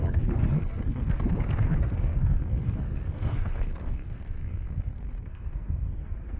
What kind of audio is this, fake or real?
fake